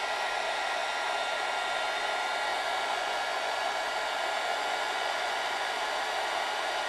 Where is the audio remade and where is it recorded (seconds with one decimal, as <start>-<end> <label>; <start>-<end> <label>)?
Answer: 0.0-2.5 recorded; 2.5-3.9 remade; 3.9-4.5 recorded; 4.5-5.8 remade; 5.8-6.9 recorded